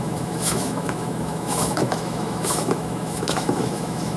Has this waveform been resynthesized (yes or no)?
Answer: yes